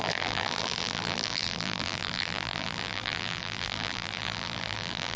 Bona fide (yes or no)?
no